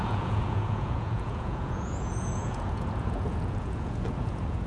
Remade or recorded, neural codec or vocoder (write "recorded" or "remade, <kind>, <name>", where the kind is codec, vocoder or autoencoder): remade, vocoder, Vocos